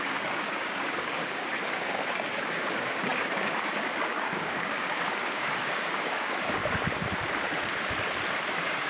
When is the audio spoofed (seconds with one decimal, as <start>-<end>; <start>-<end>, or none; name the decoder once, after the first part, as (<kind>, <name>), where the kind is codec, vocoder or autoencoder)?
0.0-6.6 (codec, DAC); 8.5-8.9